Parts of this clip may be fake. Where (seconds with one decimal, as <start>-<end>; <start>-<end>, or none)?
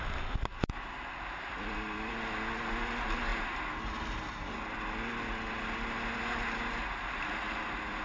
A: none